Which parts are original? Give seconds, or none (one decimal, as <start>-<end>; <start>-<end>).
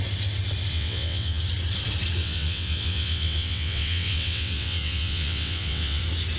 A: 0.0-0.7; 1.4-2.2; 6.0-6.4